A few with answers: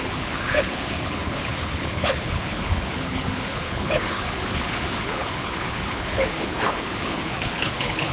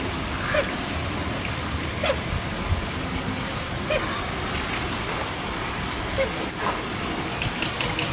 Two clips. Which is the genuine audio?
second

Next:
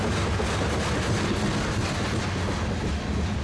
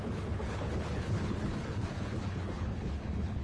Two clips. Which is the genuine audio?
first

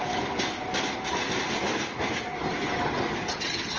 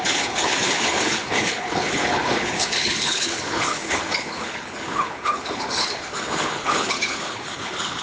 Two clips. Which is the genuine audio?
first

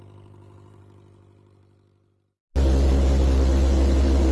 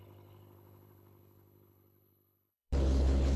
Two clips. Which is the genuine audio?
first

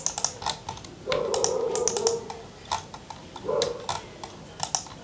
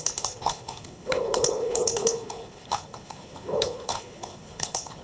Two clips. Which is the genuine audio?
first